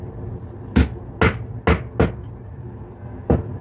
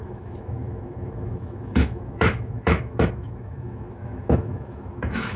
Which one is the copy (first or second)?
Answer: second